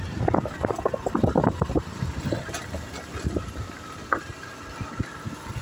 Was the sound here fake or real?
real